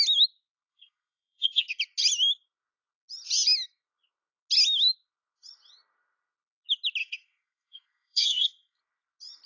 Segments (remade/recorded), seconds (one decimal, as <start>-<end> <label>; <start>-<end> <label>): 0.0-0.7 recorded; 0.7-1.8 remade; 1.8-7.0 recorded; 7.0-8.8 remade; 8.8-9.5 recorded